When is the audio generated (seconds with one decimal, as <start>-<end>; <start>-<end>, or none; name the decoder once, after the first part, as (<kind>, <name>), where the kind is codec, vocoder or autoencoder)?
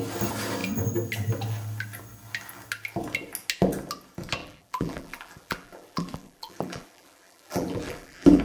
4.4-8.4 (vocoder, BigVGAN v2)